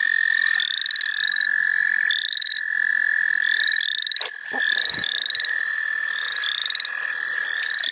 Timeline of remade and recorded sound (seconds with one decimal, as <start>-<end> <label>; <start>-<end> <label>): 0.0-7.9 recorded